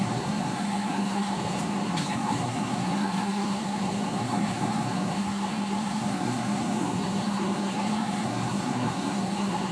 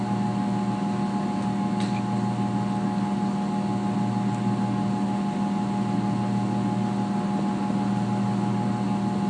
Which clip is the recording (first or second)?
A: second